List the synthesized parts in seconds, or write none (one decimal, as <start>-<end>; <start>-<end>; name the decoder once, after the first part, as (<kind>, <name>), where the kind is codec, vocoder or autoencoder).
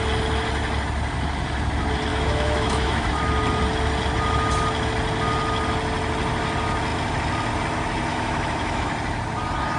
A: 2.1-3.1 (autoencoder, DAC-VAE); 8.1-8.9